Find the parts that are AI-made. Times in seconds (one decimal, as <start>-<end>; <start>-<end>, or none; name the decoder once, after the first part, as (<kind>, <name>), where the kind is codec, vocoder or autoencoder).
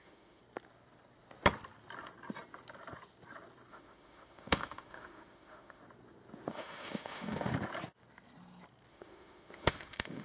0.0-0.4 (autoencoder, DAC-VAE); 3.7-5.8; 6.5-7.5; 8.9-10.2